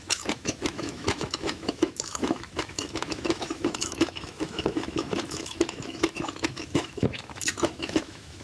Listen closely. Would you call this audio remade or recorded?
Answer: remade